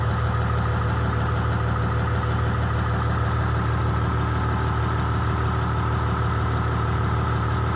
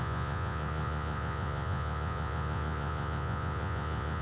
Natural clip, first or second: first